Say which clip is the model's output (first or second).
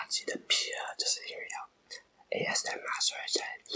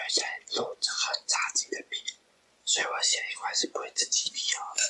second